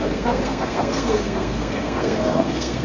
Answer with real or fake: fake